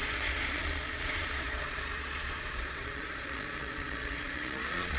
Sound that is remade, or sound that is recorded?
remade